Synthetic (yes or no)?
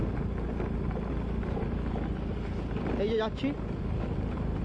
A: no